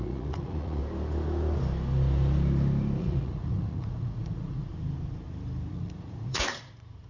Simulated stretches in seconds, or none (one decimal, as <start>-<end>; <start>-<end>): 0.0-0.8; 3.0-4.7; 5.7-7.1